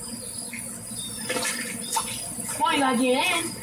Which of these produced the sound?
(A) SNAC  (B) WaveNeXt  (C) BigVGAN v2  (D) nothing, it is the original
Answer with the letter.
D